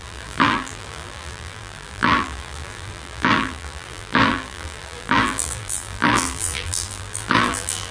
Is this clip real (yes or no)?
no